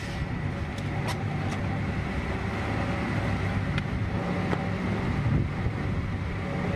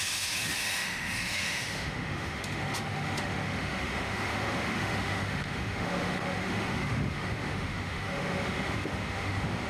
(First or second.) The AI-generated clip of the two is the second